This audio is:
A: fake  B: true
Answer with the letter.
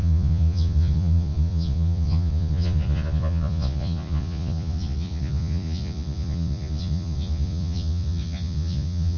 A